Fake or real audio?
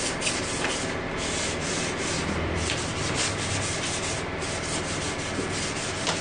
fake